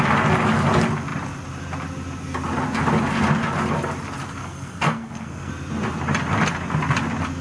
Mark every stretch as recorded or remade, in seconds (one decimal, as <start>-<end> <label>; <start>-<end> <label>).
0.0-4.4 recorded; 4.4-5.5 remade; 5.5-7.4 recorded